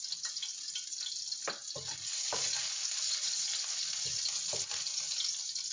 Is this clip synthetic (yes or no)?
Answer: no